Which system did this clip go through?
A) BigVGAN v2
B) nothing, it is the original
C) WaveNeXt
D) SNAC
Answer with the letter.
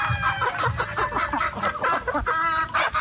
B